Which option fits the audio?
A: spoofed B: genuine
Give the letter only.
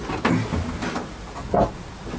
B